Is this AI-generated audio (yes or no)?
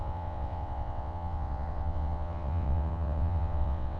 yes